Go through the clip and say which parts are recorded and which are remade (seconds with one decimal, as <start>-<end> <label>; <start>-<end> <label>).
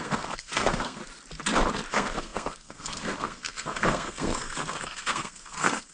0.0-1.0 remade; 1.0-1.9 recorded; 1.9-5.9 remade